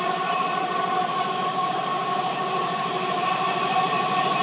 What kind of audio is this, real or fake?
fake